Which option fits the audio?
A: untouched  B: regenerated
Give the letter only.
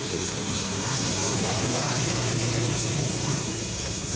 B